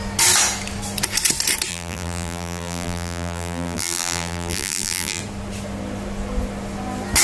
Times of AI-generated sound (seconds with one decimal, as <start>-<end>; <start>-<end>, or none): 1.7-5.2